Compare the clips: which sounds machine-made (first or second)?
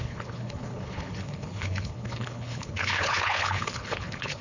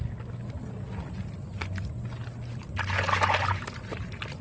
first